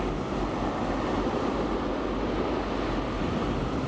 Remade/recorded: recorded